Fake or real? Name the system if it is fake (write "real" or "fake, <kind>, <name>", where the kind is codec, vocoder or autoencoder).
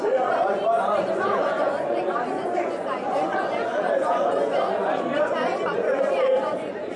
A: fake, vocoder, Vocos